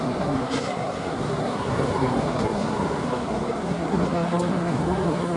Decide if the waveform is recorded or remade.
remade